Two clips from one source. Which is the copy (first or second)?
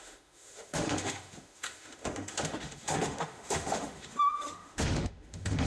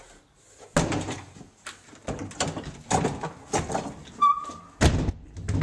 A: first